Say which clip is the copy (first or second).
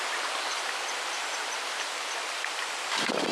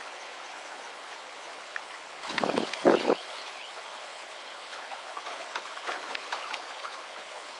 second